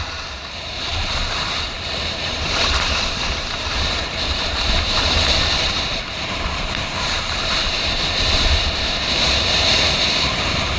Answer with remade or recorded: remade